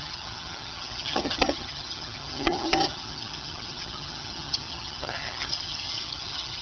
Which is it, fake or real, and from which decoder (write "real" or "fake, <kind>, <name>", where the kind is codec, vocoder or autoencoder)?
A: fake, vocoder, HiFi-GAN